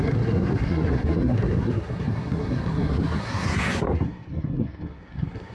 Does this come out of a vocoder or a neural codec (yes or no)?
yes